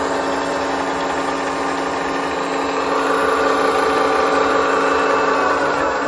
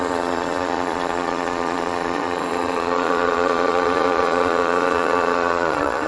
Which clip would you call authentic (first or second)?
first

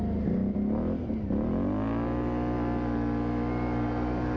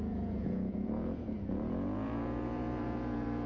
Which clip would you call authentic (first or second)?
first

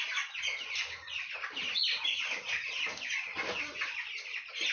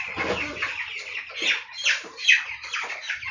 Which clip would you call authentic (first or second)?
second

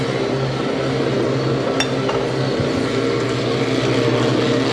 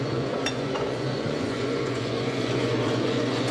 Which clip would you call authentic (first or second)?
first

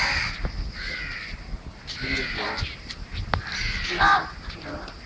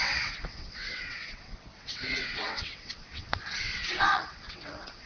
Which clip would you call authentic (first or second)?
first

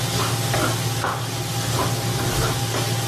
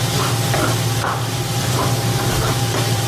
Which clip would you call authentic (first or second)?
first